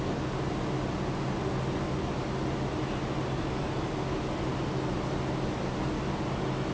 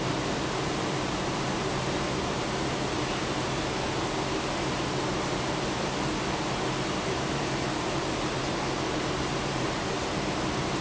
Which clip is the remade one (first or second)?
second